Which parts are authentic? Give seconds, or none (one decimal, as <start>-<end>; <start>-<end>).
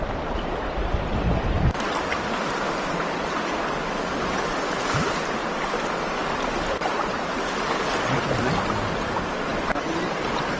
0.0-10.6